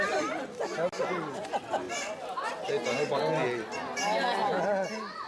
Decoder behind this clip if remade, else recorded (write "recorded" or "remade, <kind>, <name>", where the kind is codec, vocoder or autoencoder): recorded